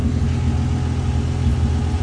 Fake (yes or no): no